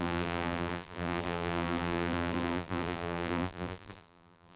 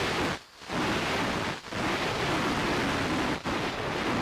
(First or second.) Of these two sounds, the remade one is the first